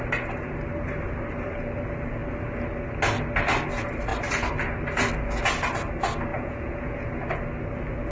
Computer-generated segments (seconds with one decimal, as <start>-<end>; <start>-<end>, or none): 6.3-7.1